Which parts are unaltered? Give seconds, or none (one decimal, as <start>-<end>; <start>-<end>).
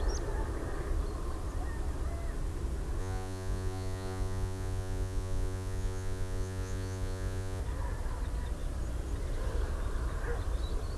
0.0-3.0; 7.6-11.0